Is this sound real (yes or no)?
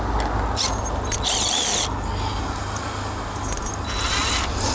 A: yes